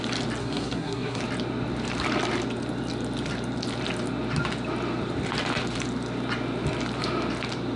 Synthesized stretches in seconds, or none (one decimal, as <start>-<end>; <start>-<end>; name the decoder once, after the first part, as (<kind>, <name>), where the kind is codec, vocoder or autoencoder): 0.4-1.2 (codec, SNAC)